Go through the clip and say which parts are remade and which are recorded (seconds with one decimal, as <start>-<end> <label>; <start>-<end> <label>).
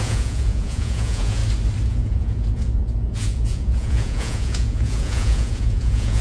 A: 0.0-1.4 remade; 1.4-1.9 recorded; 1.9-6.2 remade